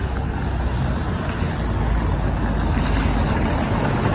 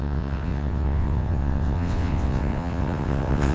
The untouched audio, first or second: first